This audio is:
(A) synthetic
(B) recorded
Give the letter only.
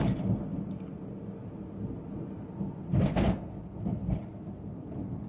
B